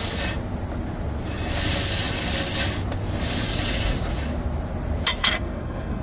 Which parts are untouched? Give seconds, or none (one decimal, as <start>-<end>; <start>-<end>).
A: 0.0-5.2